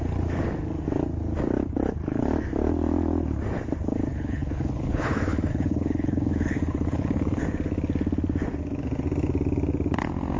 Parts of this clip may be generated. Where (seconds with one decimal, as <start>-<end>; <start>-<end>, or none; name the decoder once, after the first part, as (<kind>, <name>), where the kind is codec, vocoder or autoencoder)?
4.1-7.4 (codec, HILCodec)

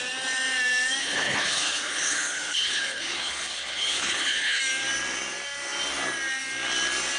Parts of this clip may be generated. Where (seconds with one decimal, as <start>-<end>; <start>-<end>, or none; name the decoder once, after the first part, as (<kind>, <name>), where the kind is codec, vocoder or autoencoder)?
1.0-4.6 (codec, HILCodec)

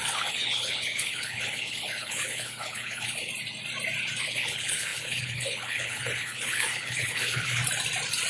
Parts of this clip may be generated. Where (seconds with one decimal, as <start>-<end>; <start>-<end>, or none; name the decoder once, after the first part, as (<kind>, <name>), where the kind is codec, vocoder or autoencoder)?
0.0-3.3 (codec, HILCodec); 4.2-7.6

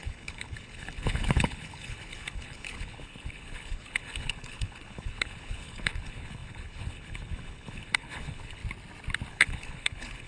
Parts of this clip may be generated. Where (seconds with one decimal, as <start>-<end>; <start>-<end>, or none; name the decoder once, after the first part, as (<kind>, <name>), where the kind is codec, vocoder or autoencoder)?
0.0-8.6 (codec, HILCodec); 9.3-10.3

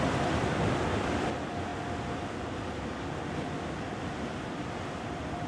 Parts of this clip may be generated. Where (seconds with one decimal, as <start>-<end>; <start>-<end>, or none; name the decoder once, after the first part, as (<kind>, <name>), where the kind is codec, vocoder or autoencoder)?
none

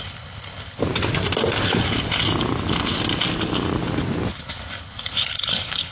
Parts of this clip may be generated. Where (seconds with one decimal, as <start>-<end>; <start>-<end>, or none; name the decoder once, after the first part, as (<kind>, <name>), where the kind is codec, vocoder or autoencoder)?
0.0-0.8 (codec, HILCodec); 4.3-5.9

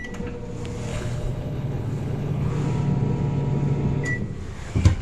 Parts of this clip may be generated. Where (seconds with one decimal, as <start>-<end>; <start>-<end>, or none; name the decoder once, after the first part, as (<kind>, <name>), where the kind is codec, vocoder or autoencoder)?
0.9-2.5 (codec, HILCodec)